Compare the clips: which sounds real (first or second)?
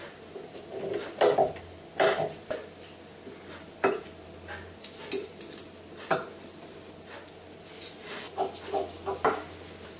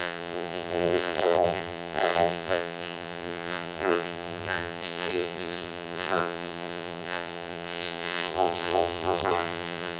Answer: first